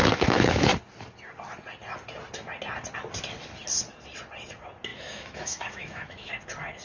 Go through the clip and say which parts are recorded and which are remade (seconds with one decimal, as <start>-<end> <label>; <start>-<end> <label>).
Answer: 0.0-0.7 remade; 0.7-4.9 recorded; 4.9-6.3 remade; 6.3-6.8 recorded